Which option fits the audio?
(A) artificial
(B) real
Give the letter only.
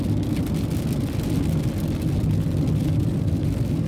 B